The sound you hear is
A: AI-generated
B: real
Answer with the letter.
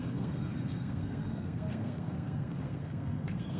A